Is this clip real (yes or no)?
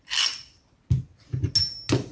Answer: yes